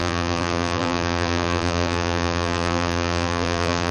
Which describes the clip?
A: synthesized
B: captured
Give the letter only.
A